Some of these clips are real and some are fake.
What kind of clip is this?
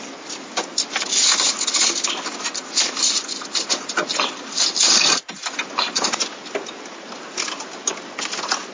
real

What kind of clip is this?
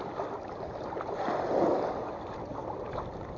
real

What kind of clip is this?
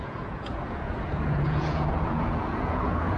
fake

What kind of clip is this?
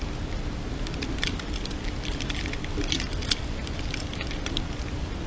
real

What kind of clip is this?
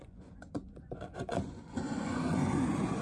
fake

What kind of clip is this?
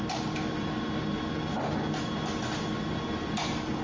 real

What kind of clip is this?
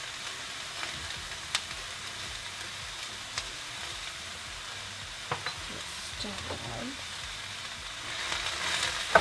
real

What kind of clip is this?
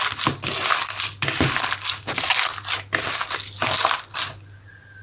real